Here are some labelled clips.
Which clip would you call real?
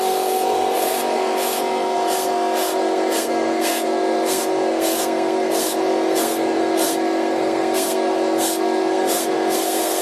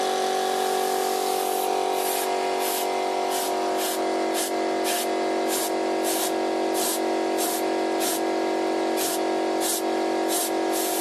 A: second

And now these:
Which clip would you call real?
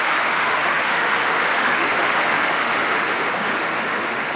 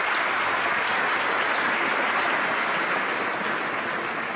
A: second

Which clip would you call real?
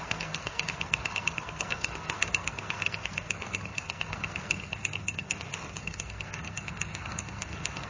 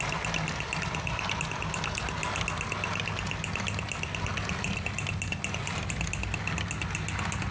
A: second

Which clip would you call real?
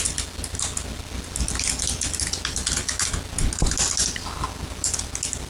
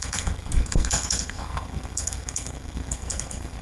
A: first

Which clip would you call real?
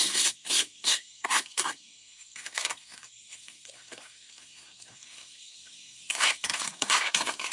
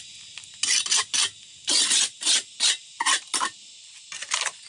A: second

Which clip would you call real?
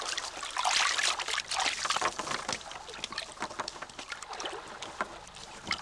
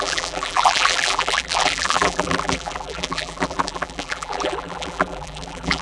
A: first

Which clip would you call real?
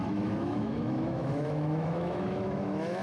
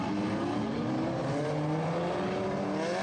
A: second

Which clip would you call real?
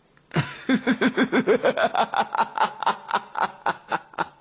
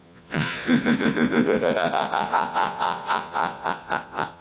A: first